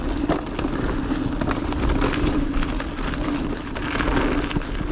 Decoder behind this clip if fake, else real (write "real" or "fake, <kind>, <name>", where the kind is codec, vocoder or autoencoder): real